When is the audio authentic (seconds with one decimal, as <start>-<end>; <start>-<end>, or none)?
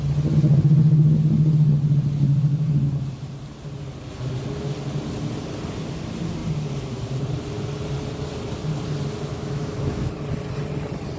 0.0-9.3; 10.1-11.2